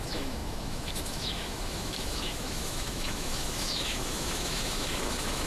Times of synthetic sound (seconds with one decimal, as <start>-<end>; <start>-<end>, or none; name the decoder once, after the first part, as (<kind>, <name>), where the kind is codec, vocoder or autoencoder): 0.0-5.5 (autoencoder, DAC-VAE)